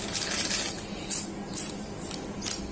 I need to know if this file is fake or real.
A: real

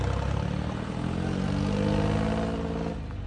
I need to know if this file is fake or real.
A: real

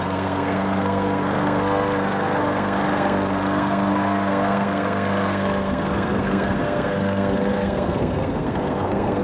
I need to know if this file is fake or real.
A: fake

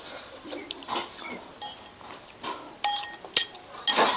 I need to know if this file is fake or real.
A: real